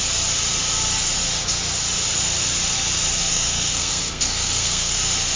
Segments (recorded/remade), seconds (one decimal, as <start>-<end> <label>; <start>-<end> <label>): 0.0-3.3 recorded; 3.3-5.0 remade; 5.0-5.4 recorded